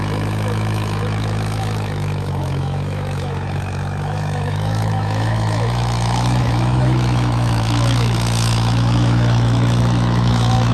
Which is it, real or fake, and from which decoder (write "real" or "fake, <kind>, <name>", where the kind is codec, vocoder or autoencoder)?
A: fake, autoencoder, DAC-VAE